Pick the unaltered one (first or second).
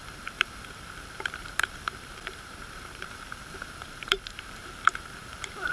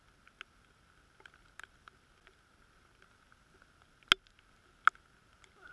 second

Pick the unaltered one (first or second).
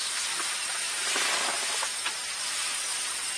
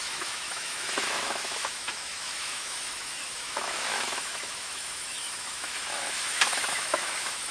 first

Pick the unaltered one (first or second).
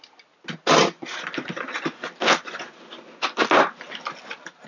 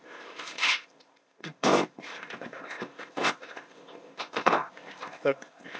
first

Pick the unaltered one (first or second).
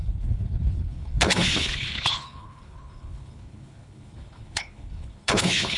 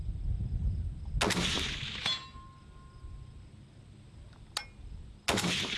second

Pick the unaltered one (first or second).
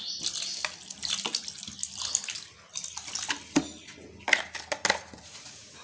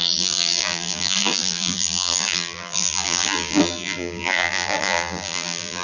first